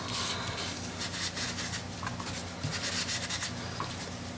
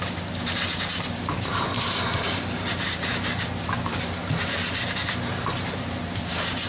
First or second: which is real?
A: first